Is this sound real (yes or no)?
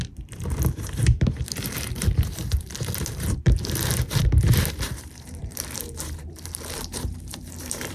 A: no